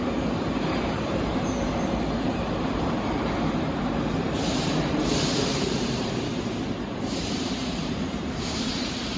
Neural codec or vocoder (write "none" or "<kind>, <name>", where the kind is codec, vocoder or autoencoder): vocoder, BigVGAN v2